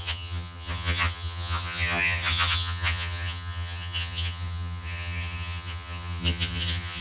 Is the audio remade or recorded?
remade